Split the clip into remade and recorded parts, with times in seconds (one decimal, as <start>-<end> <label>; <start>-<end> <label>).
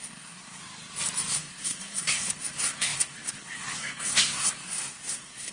0.0-0.6 remade; 0.6-1.3 recorded; 1.3-5.5 remade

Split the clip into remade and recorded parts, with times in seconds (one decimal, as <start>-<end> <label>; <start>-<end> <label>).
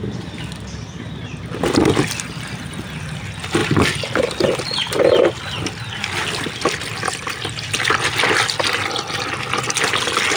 0.0-10.4 recorded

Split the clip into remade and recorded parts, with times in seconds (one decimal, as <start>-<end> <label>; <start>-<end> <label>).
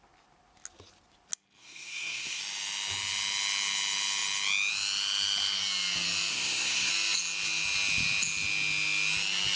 0.0-1.6 recorded; 1.6-2.4 remade; 2.4-6.3 recorded; 6.3-6.9 remade; 6.9-9.6 recorded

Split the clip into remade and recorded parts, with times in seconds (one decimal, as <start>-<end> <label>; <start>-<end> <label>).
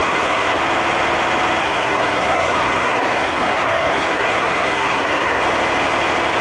0.0-0.6 remade; 0.6-1.6 recorded; 1.6-5.4 remade; 5.4-6.4 recorded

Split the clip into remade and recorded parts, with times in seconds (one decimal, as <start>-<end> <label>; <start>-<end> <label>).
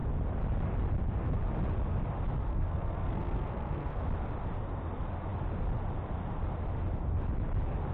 0.0-2.5 recorded; 2.5-4.0 remade; 4.0-7.9 recorded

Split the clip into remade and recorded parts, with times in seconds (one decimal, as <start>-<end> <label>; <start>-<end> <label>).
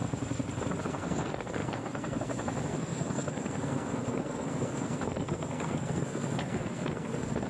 0.0-0.8 recorded; 0.8-7.5 remade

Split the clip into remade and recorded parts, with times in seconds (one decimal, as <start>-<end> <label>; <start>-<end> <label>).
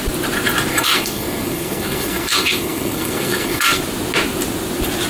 0.0-0.7 recorded; 0.7-3.8 remade; 3.8-5.1 recorded